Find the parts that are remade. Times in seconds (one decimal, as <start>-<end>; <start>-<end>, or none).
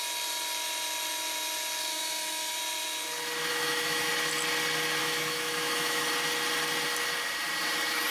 1.9-2.6; 3.5-4.1; 5.0-6.1